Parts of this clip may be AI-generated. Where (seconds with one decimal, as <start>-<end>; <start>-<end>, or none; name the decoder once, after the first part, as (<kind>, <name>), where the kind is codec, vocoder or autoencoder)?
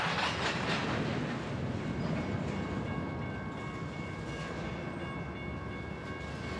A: none